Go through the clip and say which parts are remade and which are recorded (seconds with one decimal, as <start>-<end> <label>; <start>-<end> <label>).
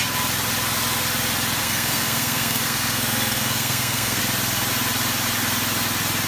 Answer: 0.0-1.6 recorded; 1.6-4.2 remade; 4.2-6.3 recorded